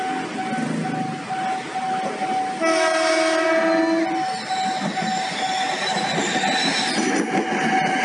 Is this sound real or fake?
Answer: real